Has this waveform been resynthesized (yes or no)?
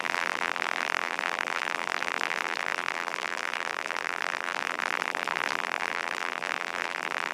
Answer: yes